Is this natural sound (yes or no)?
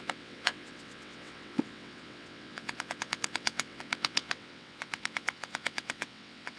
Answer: no